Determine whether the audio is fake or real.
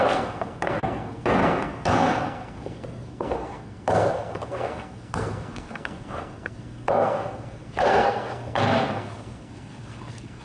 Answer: fake